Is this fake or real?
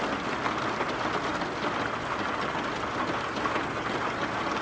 real